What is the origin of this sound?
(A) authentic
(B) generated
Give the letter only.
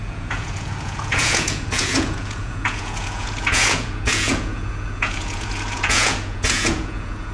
B